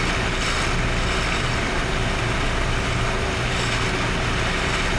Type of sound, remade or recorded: recorded